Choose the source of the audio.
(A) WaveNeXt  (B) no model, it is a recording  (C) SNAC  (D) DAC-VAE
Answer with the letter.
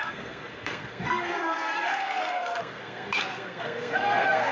C